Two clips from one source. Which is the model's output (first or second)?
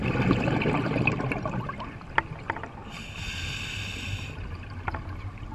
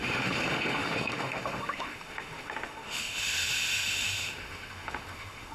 second